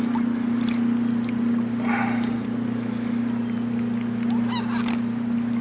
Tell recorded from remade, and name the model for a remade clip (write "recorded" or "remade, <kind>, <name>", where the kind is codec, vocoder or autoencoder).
recorded